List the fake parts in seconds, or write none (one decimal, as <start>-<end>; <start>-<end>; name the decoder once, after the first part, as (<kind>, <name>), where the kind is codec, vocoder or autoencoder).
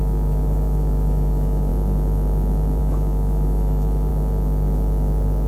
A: 0.0-1.7 (autoencoder, DAC-VAE); 2.8-4.1